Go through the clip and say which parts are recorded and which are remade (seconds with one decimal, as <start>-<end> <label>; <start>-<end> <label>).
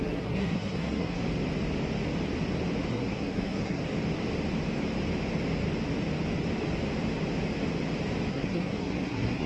0.0-1.2 remade; 1.2-2.9 recorded; 2.9-3.8 remade; 3.8-8.3 recorded; 8.3-9.5 remade